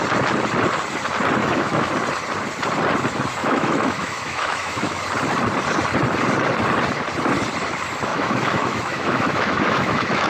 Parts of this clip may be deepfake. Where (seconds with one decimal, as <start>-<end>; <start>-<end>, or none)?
1.4-1.9; 3.4-5.0; 8.1-10.3